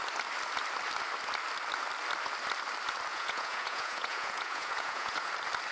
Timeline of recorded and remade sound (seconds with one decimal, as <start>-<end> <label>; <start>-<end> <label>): 0.0-3.1 recorded; 3.1-5.3 remade; 5.3-5.7 recorded